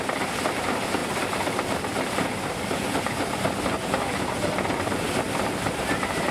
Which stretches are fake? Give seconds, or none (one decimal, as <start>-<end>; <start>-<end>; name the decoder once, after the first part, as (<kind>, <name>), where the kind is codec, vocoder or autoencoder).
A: none